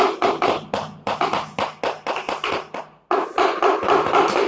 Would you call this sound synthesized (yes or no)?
no